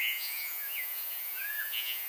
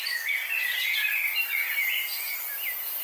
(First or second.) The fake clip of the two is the first